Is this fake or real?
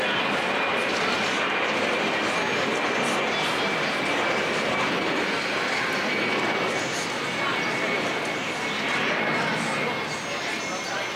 real